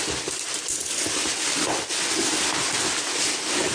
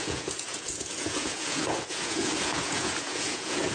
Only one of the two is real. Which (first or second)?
first